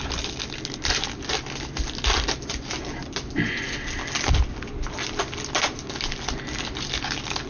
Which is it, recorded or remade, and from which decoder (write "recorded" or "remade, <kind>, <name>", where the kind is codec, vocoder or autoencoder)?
recorded